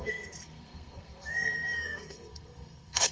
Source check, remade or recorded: remade